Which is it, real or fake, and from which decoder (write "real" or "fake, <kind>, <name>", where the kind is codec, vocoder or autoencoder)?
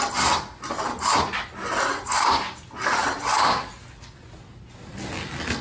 real